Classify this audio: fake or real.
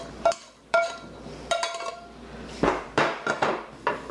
fake